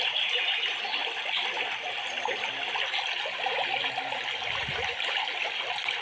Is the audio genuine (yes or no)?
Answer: yes